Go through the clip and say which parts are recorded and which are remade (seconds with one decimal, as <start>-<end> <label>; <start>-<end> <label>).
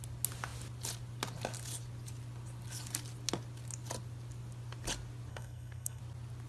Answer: 0.0-5.3 recorded; 5.3-6.0 remade; 6.0-6.5 recorded